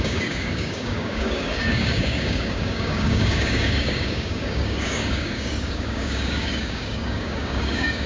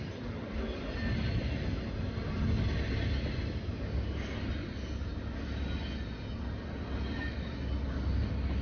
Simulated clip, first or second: first